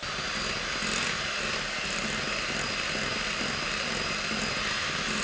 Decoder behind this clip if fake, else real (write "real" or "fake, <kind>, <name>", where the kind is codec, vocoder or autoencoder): real